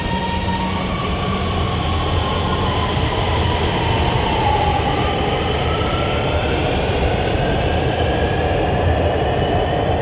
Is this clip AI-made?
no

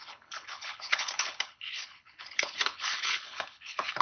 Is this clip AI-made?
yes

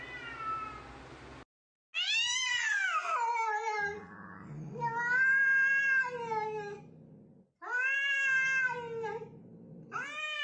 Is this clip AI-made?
no